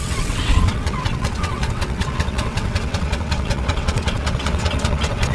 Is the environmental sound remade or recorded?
remade